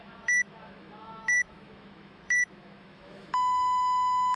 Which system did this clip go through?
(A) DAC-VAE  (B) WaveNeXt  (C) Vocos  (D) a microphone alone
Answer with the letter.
A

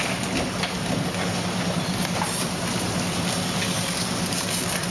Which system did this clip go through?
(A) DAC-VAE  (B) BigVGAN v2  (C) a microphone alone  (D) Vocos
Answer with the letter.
C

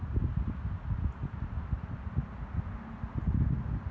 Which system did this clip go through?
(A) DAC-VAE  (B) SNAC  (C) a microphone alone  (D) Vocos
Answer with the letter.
C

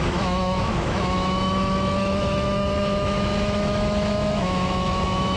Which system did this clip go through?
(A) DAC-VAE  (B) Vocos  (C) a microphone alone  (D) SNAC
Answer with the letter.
A